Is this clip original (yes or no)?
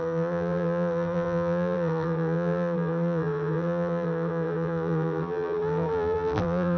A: no